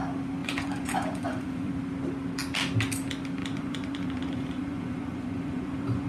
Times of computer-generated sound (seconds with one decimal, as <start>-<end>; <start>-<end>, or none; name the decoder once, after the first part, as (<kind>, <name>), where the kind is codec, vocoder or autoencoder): 0.4-1.7 (vocoder, Vocos); 3.4-6.1